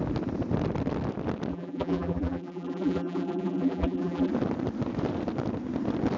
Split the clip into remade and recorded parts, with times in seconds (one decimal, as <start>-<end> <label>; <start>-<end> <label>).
0.0-1.5 recorded; 1.5-4.3 remade; 4.3-6.2 recorded